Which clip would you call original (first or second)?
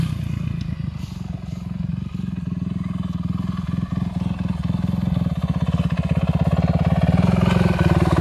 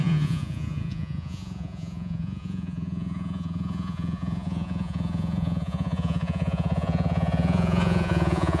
first